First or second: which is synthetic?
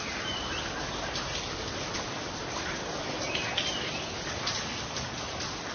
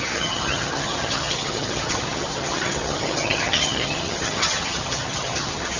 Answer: second